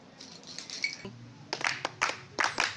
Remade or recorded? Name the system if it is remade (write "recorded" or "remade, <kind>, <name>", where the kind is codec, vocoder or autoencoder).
recorded